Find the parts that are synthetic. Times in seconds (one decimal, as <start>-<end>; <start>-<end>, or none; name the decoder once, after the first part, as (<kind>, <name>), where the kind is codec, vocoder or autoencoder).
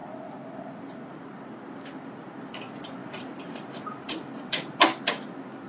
3.0-4.8 (vocoder, BigVGAN v2)